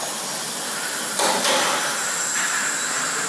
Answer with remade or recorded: recorded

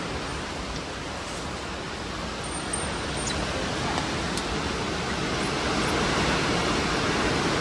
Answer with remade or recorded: recorded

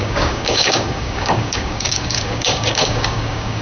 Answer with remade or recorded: remade